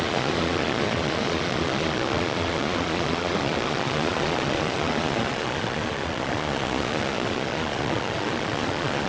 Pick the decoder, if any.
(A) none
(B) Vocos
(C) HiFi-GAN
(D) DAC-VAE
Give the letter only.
B